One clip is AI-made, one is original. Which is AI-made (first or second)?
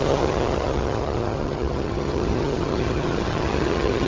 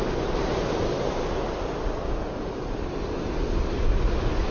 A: first